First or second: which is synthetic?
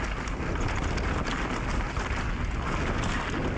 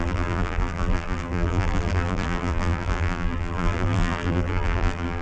second